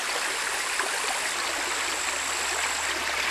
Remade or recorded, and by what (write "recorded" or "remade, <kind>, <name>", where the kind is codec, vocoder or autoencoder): recorded